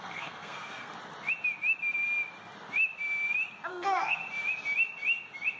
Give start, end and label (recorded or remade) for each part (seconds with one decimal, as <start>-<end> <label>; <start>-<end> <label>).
0.0-0.9 remade; 0.9-3.7 recorded; 3.7-4.2 remade; 4.2-5.6 recorded